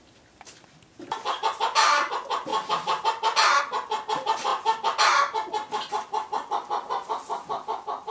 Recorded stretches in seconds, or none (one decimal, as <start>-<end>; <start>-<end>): 0.0-8.1